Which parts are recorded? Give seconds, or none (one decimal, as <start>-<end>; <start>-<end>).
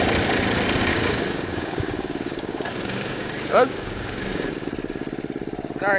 0.0-0.9; 4.5-6.0